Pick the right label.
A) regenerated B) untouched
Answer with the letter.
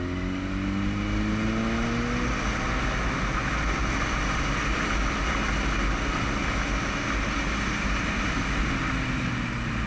B